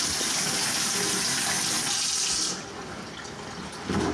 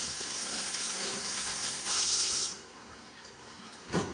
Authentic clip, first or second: first